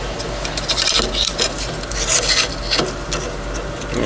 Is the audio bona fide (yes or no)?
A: yes